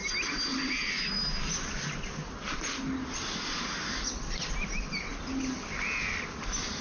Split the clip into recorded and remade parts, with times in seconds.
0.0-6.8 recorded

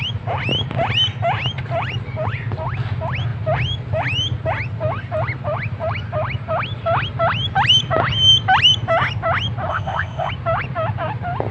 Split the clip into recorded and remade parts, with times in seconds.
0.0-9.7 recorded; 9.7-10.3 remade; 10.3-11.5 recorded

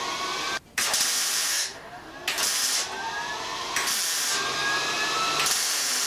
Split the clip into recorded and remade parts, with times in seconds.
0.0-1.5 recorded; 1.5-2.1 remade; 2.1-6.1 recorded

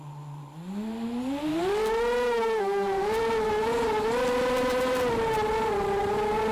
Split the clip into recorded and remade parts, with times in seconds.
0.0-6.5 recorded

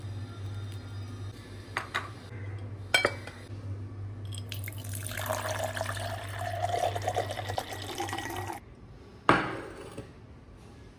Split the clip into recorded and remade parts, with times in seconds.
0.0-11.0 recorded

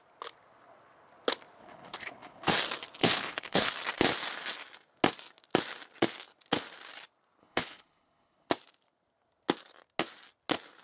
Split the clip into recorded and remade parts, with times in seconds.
0.0-1.6 recorded; 1.6-2.5 remade; 2.5-3.0 recorded; 3.0-3.7 remade; 3.7-7.4 recorded; 7.4-8.5 remade; 8.5-10.8 recorded

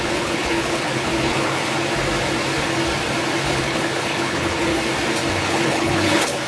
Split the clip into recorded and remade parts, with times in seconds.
0.0-1.6 remade; 1.6-3.4 recorded; 3.4-4.7 remade; 4.7-5.4 recorded; 5.4-6.5 remade